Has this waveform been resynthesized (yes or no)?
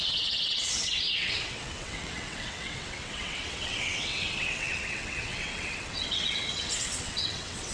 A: yes